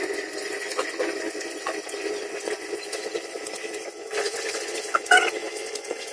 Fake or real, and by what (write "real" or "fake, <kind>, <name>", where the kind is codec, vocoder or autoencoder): fake, vocoder, Vocos